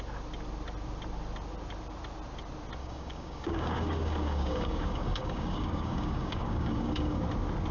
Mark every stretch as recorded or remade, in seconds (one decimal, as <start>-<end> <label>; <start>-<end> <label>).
0.0-2.8 recorded; 2.8-7.2 remade; 7.2-7.7 recorded